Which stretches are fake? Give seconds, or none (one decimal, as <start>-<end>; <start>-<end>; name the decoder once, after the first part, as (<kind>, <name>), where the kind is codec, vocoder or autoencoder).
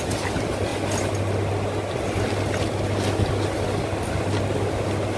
none